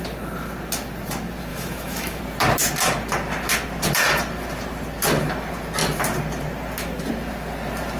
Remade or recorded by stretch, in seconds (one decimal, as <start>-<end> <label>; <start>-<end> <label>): 0.0-1.5 recorded; 1.5-2.2 remade; 2.2-8.0 recorded